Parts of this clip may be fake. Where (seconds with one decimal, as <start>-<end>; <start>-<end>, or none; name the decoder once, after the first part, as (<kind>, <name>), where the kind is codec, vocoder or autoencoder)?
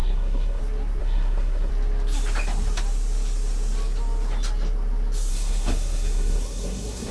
0.0-0.6 (codec, SNAC); 1.0-1.7; 5.3-7.1